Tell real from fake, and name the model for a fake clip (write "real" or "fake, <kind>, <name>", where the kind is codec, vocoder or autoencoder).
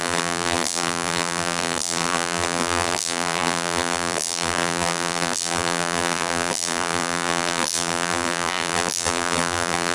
fake, vocoder, BigVGAN v2